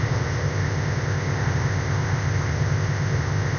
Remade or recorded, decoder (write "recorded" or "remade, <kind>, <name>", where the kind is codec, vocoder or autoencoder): remade, codec, ZipCodec